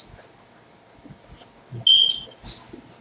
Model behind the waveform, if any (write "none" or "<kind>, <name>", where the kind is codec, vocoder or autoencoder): none